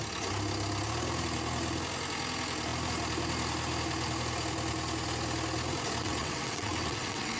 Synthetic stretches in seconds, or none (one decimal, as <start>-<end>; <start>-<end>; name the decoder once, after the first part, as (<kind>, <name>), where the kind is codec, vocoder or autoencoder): 6.0-7.4 (vocoder, WaveNeXt)